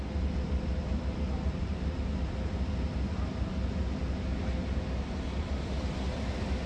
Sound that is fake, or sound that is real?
real